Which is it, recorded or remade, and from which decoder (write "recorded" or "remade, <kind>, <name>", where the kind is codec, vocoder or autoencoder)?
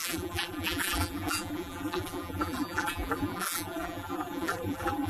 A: remade, vocoder, BigVGAN v2